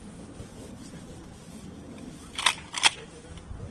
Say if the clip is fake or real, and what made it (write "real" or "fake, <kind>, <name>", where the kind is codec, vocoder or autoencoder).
real